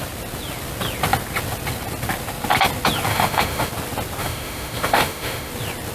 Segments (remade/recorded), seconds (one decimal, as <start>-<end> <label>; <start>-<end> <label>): 0.0-3.1 recorded; 3.1-3.7 remade; 3.7-4.2 recorded; 4.2-5.5 remade; 5.5-5.9 recorded